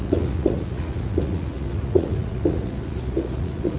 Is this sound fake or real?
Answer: fake